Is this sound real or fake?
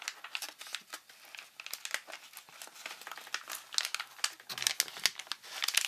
real